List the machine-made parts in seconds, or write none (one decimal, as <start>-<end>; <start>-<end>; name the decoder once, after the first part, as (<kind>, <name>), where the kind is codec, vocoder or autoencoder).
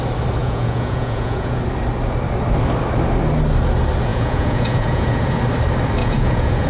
0.4-1.6 (vocoder, Vocos); 4.1-5.4; 6.0-6.7